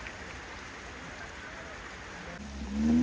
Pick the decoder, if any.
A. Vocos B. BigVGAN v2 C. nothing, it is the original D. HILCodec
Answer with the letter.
C